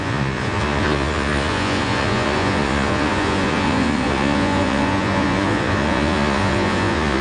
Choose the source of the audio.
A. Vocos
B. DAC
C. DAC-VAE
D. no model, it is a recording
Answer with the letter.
A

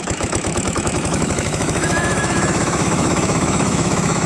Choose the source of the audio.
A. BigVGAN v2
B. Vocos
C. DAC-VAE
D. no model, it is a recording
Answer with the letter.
C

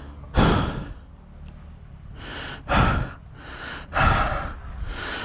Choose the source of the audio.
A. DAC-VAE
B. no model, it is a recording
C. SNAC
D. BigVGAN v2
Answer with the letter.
B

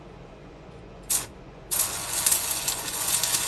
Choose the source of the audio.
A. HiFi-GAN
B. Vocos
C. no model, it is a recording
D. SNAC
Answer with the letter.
B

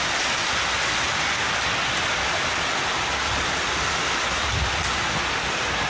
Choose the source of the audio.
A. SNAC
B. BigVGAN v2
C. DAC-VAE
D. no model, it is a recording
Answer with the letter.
D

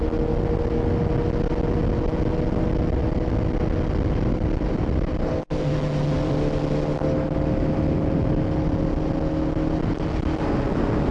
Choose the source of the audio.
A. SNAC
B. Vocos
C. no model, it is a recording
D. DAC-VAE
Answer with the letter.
C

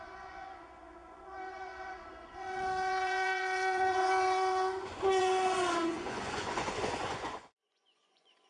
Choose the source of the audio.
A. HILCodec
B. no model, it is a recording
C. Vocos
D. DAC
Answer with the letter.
C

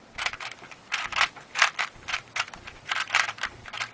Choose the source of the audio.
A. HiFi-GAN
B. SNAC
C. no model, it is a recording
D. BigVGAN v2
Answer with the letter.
D